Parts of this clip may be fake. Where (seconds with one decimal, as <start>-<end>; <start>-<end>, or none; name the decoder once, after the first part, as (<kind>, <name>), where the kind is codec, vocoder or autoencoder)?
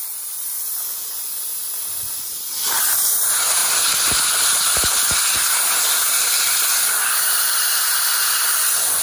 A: none